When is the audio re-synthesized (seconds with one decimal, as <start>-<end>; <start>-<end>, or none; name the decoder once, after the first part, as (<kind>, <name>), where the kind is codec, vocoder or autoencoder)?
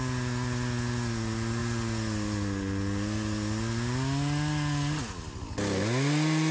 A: none